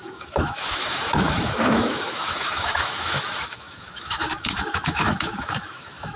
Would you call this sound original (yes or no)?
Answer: no